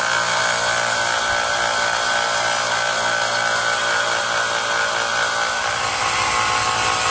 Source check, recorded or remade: recorded